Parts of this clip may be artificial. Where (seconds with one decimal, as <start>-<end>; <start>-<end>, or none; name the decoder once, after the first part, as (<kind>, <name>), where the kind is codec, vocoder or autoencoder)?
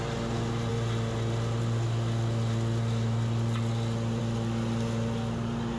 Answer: none